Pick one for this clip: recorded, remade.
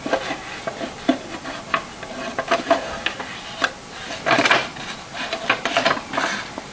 recorded